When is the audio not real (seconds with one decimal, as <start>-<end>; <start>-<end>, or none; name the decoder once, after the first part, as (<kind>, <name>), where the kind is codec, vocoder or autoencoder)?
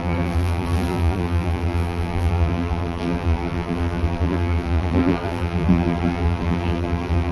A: 0.0-7.3 (vocoder, BigVGAN v2)